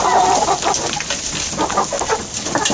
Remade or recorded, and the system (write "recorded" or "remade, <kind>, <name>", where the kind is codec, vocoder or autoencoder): recorded